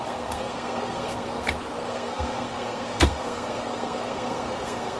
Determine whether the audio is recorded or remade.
remade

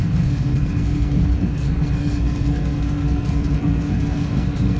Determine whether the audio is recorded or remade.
remade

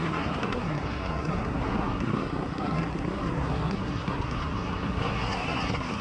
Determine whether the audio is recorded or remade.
remade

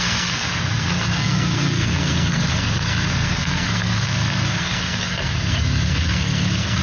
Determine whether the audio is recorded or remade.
remade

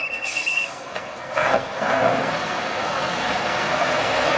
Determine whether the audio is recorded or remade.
remade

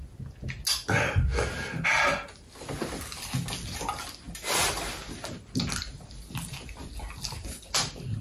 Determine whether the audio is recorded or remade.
recorded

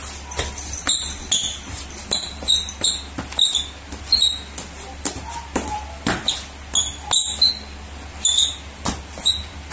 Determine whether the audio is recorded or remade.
recorded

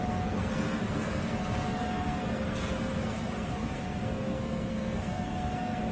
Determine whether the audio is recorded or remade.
remade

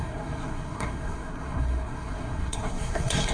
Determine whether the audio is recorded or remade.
remade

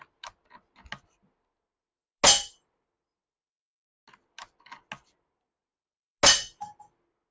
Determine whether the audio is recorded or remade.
recorded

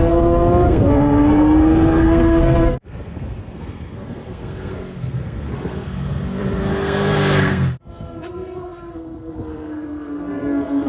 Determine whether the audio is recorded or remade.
remade